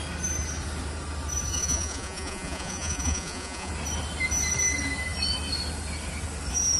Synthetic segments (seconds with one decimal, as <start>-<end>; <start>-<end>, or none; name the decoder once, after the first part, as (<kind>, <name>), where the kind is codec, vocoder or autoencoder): 1.5-3.7 (vocoder, Vocos)